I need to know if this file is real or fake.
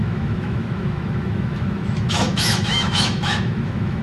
fake